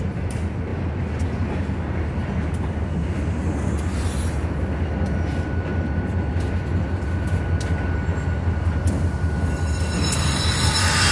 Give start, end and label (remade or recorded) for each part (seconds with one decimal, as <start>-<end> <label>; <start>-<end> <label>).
0.0-11.1 recorded

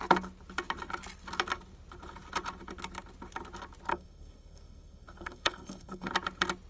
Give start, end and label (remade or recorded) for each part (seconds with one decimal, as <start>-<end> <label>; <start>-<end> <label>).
0.0-3.9 recorded; 3.9-6.1 remade; 6.1-6.7 recorded

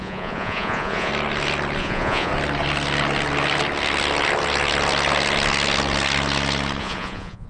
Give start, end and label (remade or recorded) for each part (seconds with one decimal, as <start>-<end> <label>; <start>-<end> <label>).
0.0-1.1 remade; 1.1-1.8 recorded; 1.8-2.3 remade; 2.3-6.8 recorded; 6.8-7.5 remade